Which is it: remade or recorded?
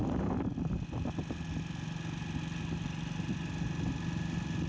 recorded